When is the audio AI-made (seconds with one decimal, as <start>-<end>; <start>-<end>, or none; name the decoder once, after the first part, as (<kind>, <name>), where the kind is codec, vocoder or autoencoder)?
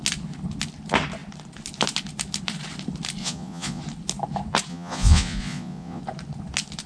3.2-3.8 (vocoder, Vocos); 4.7-6.0